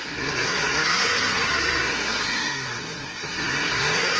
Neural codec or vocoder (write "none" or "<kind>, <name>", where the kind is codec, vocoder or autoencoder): codec, SNAC